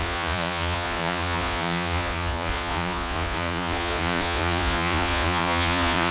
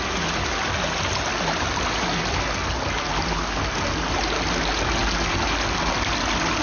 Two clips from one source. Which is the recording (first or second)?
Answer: second